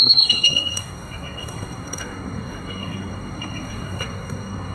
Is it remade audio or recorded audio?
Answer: remade